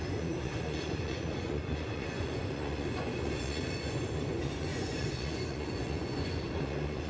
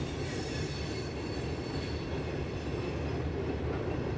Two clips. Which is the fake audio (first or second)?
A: first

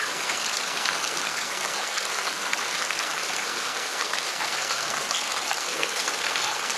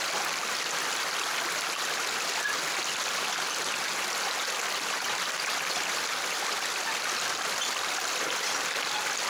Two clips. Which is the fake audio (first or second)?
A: first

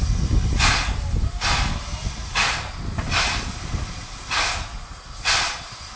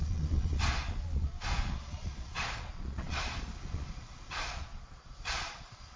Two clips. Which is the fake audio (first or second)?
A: second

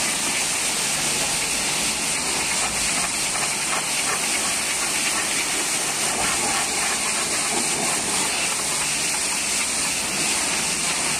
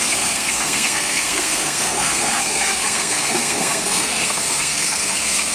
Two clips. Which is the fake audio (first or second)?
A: second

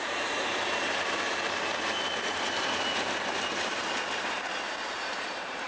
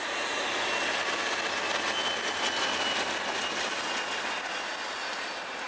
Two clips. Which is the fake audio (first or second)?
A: first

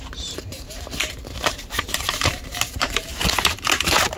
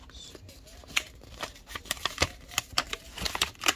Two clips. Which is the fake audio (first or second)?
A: first